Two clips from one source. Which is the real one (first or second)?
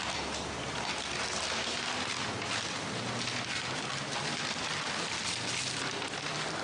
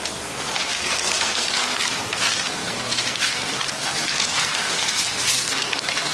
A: first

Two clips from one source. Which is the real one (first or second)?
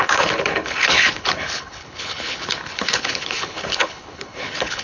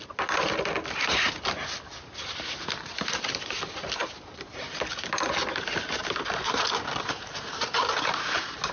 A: second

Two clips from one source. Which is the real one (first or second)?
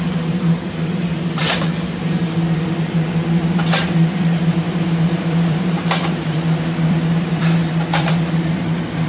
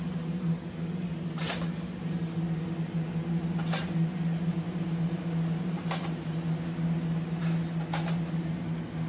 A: second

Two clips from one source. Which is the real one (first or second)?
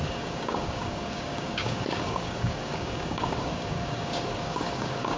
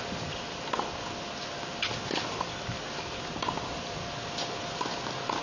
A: second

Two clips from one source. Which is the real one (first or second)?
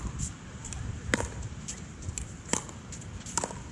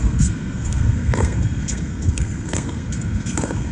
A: first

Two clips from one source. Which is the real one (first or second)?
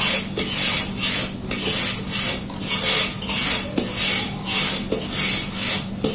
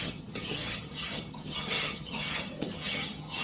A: first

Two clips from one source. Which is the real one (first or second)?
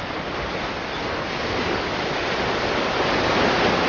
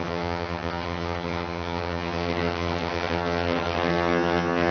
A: first